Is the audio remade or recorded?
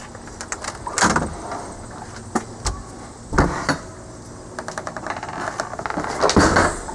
recorded